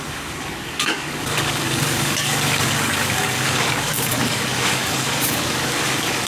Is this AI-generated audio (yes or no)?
yes